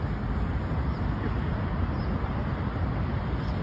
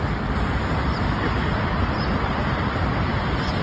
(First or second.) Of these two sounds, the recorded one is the first